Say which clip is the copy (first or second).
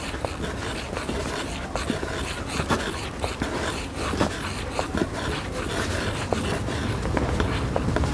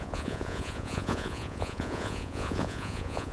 second